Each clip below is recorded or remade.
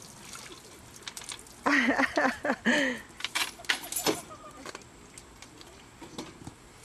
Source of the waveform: recorded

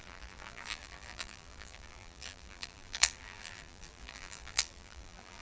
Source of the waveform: remade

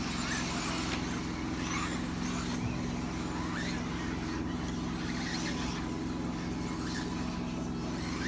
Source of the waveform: recorded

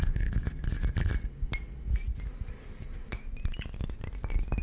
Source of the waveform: recorded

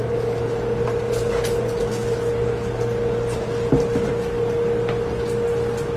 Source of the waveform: recorded